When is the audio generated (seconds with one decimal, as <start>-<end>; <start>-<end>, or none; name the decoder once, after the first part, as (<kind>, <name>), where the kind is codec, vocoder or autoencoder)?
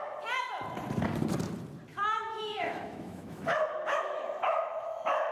1.9-5.3 (autoencoder, DAC-VAE)